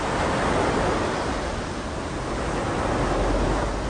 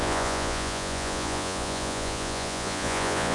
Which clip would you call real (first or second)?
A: first